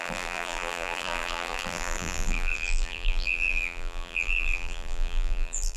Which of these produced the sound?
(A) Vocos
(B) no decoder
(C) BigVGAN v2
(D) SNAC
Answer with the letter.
C